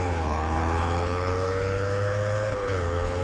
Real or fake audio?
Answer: fake